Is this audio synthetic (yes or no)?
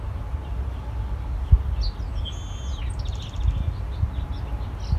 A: no